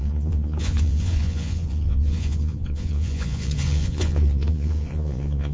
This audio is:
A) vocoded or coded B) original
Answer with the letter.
A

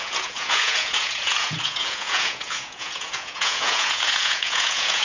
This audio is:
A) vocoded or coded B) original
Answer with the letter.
A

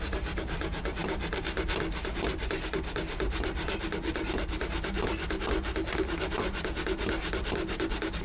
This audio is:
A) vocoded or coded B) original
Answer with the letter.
B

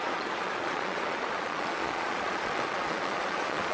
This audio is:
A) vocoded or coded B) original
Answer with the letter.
A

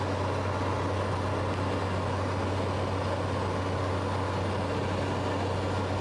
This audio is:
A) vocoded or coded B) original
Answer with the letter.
B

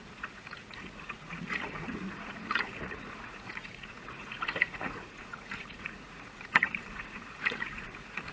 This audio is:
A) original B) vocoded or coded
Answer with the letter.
B